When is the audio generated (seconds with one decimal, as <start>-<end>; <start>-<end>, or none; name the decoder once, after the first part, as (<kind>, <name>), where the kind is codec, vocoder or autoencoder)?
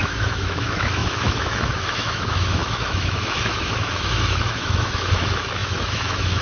0.0-6.4 (autoencoder, DAC-VAE)